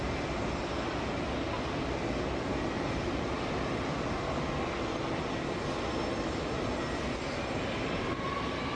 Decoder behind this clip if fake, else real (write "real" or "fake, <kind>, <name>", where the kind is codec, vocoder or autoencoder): real